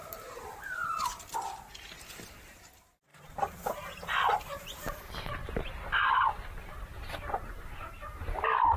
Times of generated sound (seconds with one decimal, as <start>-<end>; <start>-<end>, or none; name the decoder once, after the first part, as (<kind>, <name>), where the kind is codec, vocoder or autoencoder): 0.0-1.3 (vocoder, BigVGAN v2); 3.1-7.9